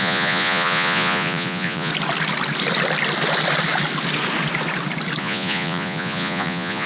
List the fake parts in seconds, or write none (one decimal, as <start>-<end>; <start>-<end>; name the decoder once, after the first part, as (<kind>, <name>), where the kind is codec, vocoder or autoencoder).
0.0-1.9 (vocoder, Vocos); 5.2-6.9